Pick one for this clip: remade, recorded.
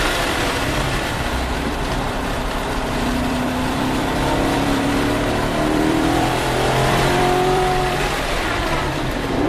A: remade